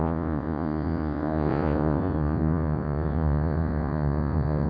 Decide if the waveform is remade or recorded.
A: remade